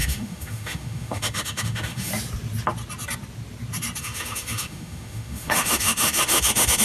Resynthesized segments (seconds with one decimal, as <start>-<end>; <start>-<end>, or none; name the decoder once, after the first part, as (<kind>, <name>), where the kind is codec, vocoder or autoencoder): 0.0-2.1 (autoencoder, DAC-VAE); 4.0-6.8